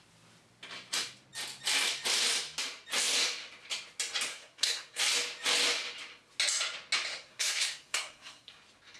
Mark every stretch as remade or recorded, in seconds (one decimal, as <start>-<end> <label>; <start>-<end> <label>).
0.0-4.3 recorded; 4.3-5.0 remade; 5.0-7.1 recorded; 7.1-8.5 remade; 8.5-9.0 recorded